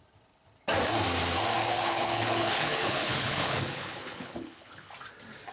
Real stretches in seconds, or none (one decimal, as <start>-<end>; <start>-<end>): 0.0-1.6; 4.9-5.5